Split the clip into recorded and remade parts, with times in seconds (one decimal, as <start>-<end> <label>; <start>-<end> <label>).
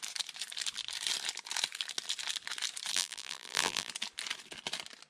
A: 0.0-2.9 recorded; 2.9-3.9 remade; 3.9-5.1 recorded